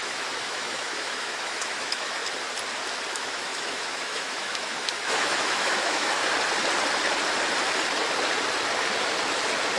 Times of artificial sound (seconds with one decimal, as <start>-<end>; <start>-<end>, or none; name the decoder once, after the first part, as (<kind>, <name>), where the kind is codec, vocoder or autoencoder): 0.0-2.2 (autoencoder, DAC-VAE); 3.1-6.2